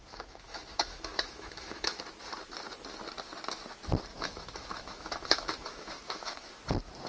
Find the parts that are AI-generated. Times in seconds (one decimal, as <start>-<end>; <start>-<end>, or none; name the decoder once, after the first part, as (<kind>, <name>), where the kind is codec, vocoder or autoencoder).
0.0-2.0 (autoencoder, DAC-VAE); 4.1-6.5